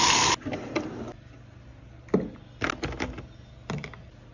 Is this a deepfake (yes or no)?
no